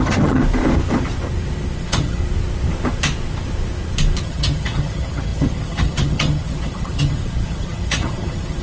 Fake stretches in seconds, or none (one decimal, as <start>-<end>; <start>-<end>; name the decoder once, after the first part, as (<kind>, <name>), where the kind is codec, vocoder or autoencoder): 0.0-0.4 (vocoder, HiFi-GAN); 1.8-2.2; 4.2-8.6